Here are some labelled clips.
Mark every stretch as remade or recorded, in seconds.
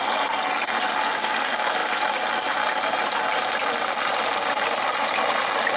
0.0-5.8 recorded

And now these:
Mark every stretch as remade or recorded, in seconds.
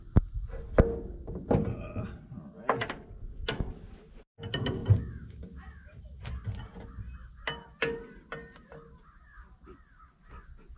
0.0-10.8 recorded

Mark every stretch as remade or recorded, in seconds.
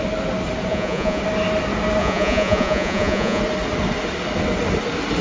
0.0-0.7 recorded; 0.7-1.2 remade; 1.2-2.0 recorded; 2.0-3.4 remade; 3.4-5.2 recorded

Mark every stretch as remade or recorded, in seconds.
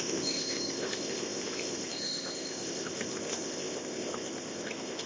0.0-5.1 remade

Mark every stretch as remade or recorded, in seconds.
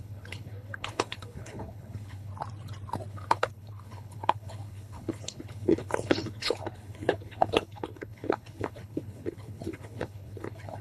0.0-2.3 remade; 2.3-3.1 recorded; 3.1-10.8 remade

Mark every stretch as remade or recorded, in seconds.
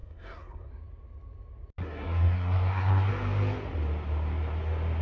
0.0-0.7 remade; 0.7-1.8 recorded; 1.8-3.1 remade; 3.1-5.0 recorded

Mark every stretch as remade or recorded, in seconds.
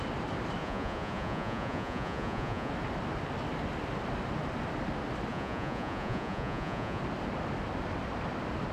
0.0-0.6 recorded; 0.6-2.7 remade; 2.7-5.3 recorded; 5.3-7.0 remade; 7.0-8.7 recorded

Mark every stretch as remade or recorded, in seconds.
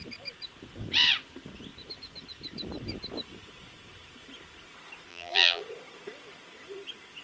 0.0-5.1 recorded; 5.1-5.6 remade; 5.6-7.2 recorded